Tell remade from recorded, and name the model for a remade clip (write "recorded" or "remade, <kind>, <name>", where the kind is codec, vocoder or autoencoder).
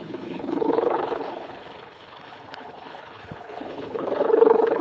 remade, codec, HILCodec